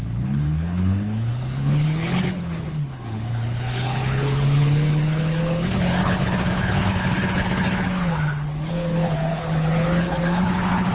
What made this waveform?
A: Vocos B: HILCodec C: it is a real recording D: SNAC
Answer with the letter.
B